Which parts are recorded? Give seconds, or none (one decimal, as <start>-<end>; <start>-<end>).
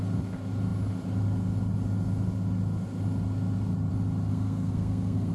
0.0-4.3